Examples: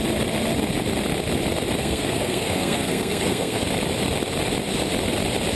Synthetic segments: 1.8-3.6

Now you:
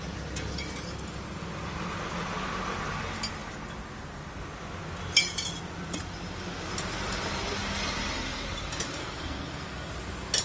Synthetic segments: 9.0-9.9

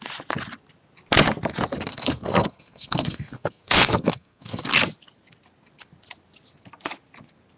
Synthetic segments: 1.9-4.6

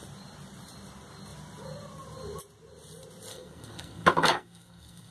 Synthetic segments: 3.3-5.1